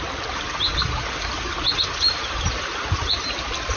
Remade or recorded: recorded